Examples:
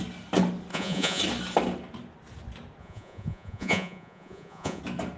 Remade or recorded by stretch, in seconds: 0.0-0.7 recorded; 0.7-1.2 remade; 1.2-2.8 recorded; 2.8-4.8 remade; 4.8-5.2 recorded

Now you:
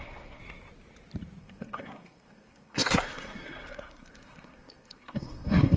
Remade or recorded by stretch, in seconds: 0.0-0.4 remade; 0.4-1.4 recorded; 1.4-5.8 remade

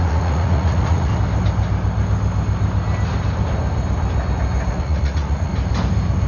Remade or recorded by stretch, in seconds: 0.0-1.1 remade; 1.1-4.7 recorded; 4.7-5.5 remade; 5.5-6.3 recorded

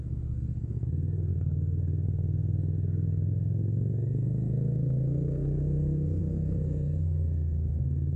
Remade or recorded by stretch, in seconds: 0.0-8.2 remade

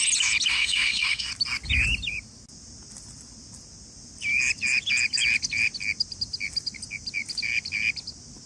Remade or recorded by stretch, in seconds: 0.0-0.5 recorded; 0.5-1.3 remade; 1.3-8.5 recorded

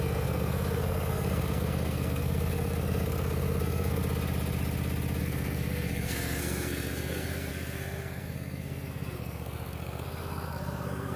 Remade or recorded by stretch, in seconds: 0.0-4.0 remade; 4.0-5.2 recorded; 5.2-11.2 remade

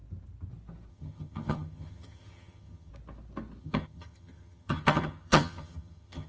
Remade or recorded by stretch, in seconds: 0.0-0.9 recorded; 0.9-2.9 remade; 2.9-3.6 recorded; 3.6-6.3 remade

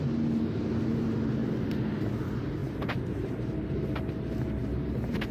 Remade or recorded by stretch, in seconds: 0.0-2.6 recorded; 2.6-4.1 remade; 4.1-4.6 recorded; 4.6-5.3 remade